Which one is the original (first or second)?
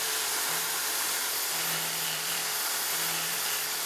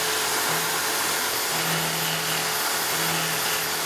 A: second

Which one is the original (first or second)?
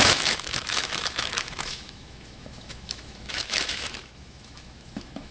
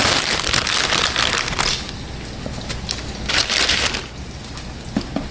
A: second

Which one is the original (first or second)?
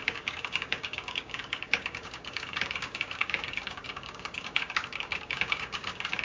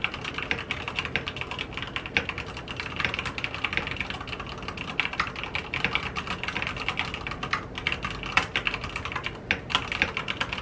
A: second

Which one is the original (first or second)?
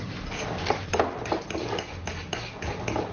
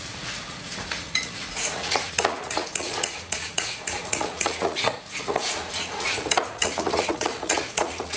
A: first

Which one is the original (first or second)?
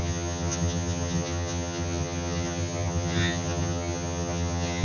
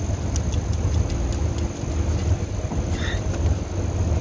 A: second